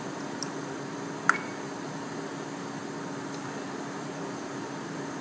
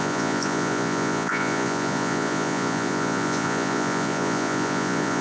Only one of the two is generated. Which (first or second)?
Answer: second